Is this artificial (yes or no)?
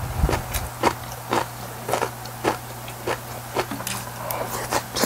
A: no